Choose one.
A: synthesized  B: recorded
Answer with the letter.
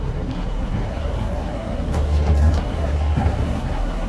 A